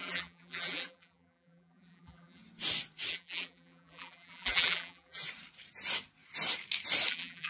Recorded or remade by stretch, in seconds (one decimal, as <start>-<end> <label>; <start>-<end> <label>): 0.0-2.4 remade; 2.4-3.1 recorded; 3.1-5.2 remade; 5.2-7.1 recorded; 7.1-7.5 remade